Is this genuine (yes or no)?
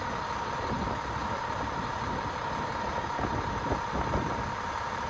yes